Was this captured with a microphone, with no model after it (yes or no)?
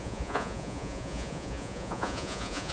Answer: no